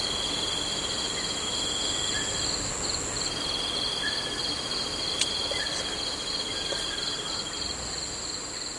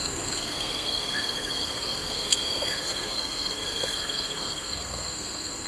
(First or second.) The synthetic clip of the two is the second